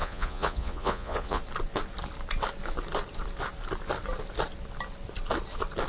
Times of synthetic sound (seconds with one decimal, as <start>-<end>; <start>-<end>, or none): 0.0-1.4